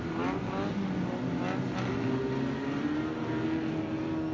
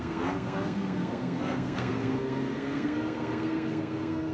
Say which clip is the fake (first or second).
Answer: second